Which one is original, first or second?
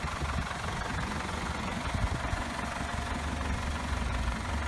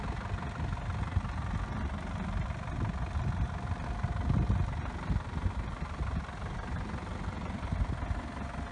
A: second